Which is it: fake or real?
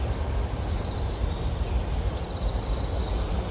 real